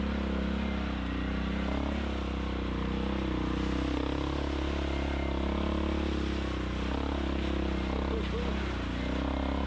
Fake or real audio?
real